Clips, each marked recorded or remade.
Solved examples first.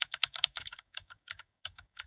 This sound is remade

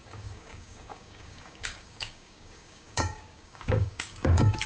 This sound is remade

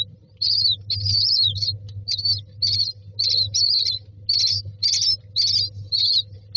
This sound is recorded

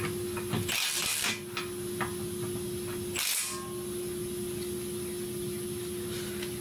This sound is recorded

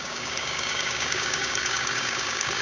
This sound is remade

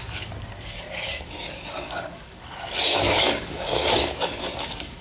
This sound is remade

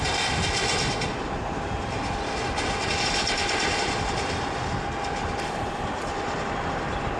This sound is recorded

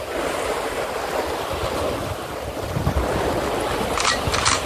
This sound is recorded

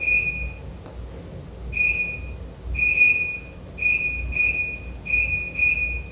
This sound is recorded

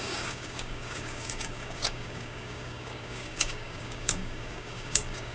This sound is remade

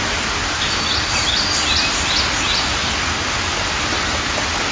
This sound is recorded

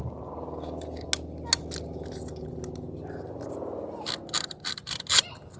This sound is recorded